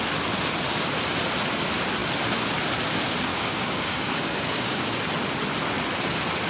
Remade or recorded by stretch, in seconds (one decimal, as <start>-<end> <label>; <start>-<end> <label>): 0.0-3.3 recorded; 3.3-5.1 remade; 5.1-6.5 recorded